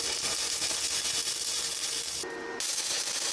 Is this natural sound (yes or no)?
yes